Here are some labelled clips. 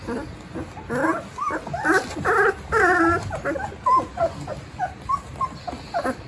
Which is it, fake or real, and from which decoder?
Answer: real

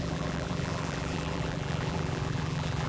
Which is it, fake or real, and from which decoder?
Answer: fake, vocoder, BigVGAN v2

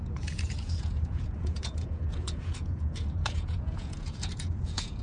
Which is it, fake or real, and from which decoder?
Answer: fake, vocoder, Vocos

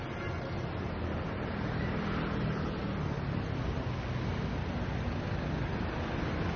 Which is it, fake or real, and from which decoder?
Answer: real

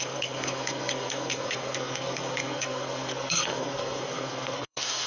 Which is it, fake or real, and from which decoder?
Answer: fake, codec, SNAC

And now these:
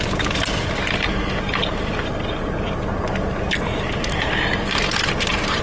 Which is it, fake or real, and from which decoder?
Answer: real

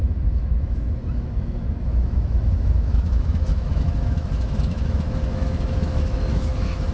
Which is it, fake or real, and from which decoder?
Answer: fake, autoencoder, DAC-VAE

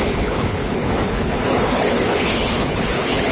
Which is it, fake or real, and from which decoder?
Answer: fake, codec, HILCodec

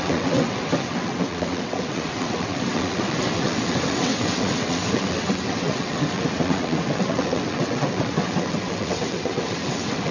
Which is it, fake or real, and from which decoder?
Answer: fake, vocoder, WaveNeXt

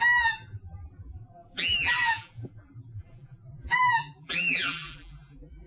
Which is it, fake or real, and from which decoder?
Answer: fake, vocoder, BigVGAN v2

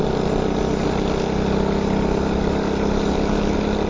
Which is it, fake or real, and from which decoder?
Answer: real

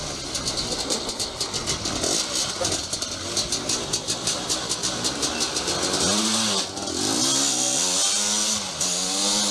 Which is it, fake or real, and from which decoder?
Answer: real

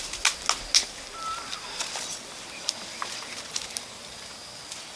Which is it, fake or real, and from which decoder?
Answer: real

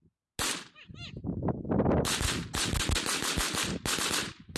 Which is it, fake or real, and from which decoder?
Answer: real